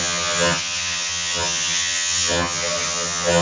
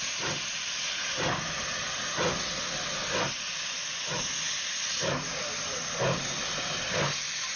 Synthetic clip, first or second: first